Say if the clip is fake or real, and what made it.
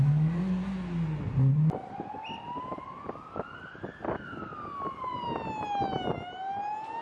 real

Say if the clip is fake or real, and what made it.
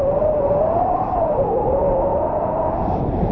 fake, vocoder, BigVGAN v2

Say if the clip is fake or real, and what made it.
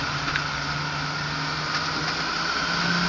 real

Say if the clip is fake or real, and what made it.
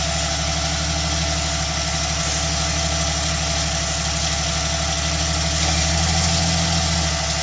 real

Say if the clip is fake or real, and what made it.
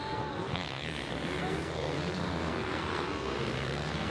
fake, codec, SNAC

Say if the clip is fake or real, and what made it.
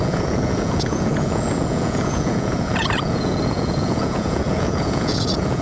fake, vocoder, Vocos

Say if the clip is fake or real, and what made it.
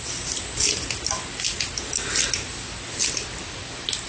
real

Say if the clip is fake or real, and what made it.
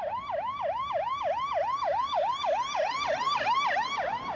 real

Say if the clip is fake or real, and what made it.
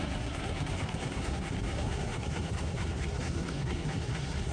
fake, codec, SNAC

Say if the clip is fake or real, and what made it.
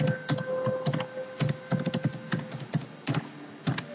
real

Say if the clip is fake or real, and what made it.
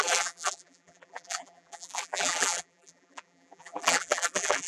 fake, vocoder, BigVGAN v2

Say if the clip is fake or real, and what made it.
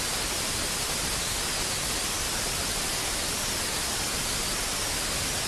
real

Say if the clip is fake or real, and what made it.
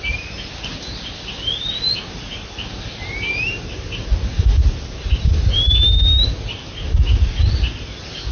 real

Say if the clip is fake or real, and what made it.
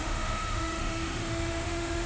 fake, autoencoder, DAC-VAE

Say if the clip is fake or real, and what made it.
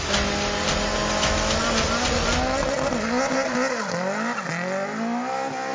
real